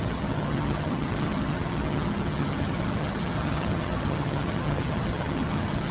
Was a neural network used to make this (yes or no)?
yes